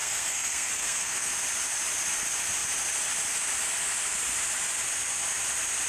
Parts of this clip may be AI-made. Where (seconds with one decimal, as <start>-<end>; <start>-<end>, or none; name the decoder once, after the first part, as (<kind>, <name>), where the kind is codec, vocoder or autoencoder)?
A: 0.0-1.3 (codec, SNAC)